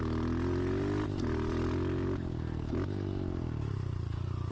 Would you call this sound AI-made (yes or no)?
no